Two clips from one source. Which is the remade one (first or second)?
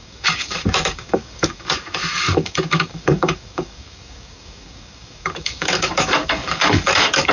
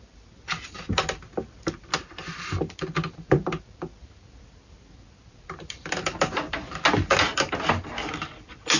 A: first